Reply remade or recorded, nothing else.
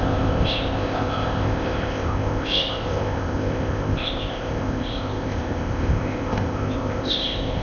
remade